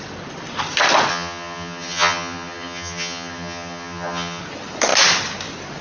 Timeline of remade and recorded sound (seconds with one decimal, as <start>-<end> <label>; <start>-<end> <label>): 0.0-1.1 recorded; 1.1-4.4 remade; 4.4-5.8 recorded